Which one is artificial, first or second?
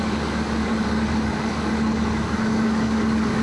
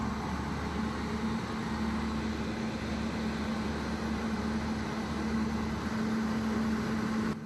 first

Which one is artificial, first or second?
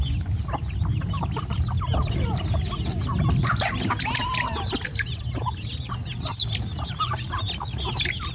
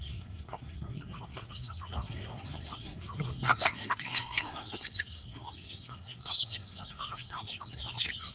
second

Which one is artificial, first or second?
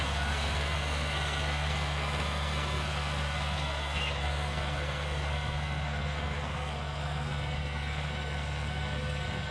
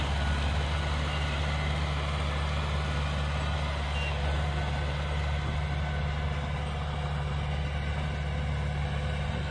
first